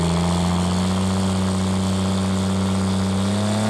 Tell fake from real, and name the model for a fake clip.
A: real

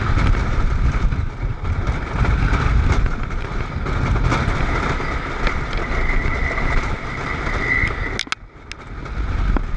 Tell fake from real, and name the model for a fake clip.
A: real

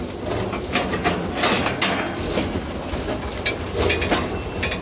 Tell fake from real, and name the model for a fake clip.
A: real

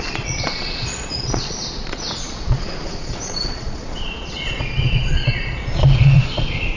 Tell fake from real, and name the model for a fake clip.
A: fake, vocoder, Vocos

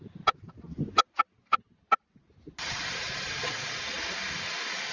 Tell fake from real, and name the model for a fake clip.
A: real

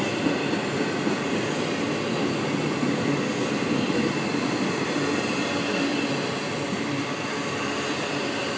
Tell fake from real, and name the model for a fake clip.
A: fake, vocoder, BigVGAN v2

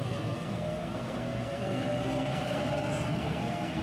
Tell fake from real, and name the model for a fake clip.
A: fake, codec, SNAC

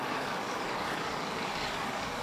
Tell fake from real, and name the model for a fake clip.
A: fake, codec, DAC